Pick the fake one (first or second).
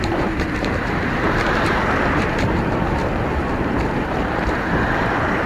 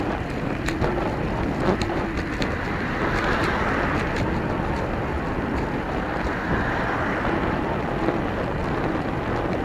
first